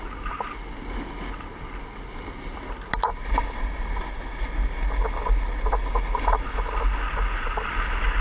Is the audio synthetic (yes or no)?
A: no